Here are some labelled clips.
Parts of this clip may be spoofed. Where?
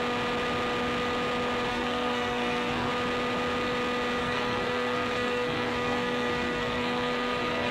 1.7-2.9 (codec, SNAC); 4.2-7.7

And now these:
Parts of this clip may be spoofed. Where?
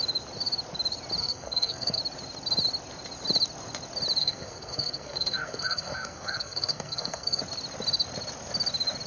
1.2-2.0 (codec, SNAC); 4.2-7.4